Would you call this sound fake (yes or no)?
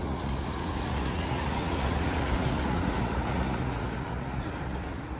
yes